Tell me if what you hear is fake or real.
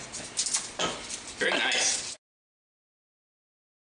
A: real